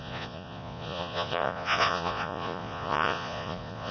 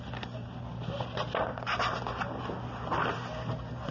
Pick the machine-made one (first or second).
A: first